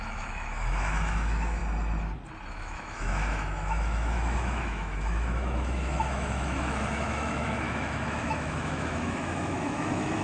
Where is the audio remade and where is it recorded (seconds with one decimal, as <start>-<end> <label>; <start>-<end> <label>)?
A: 0.0-1.6 remade; 1.6-2.5 recorded; 2.5-10.2 remade